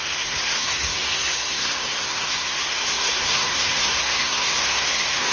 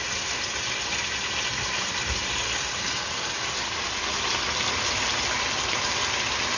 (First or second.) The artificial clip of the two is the first